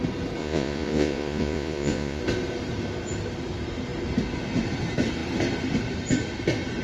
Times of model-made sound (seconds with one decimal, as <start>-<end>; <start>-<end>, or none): 0.4-2.2